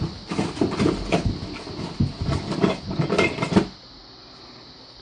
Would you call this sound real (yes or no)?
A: yes